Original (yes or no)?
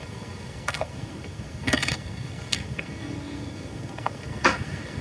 no